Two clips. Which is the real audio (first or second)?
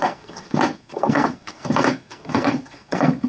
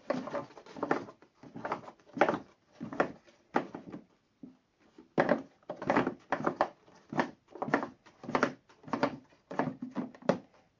second